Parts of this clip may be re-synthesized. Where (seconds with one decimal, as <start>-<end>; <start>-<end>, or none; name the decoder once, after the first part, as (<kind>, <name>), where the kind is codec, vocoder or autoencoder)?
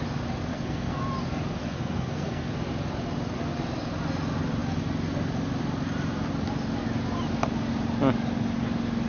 0.5-1.0 (codec, SNAC); 1.6-2.5